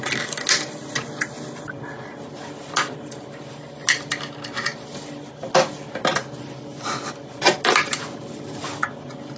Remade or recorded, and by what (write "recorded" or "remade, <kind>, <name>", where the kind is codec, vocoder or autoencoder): recorded